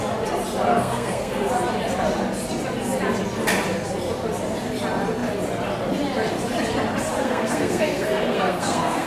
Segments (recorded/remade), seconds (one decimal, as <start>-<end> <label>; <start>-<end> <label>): 0.0-0.7 recorded; 0.7-1.5 remade; 1.5-7.2 recorded; 7.2-9.1 remade